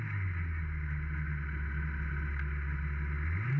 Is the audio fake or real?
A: real